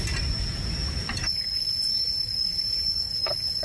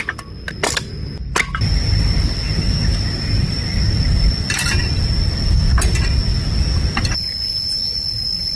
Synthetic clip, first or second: first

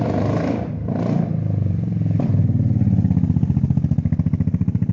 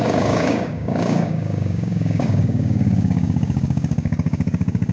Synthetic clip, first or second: second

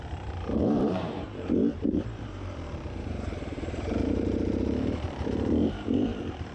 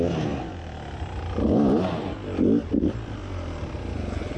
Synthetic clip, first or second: first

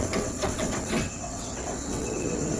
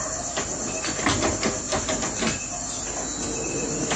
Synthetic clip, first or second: first